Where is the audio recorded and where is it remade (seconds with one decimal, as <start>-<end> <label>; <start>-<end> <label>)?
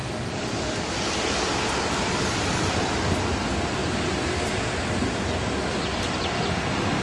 0.0-2.7 remade; 2.7-7.0 recorded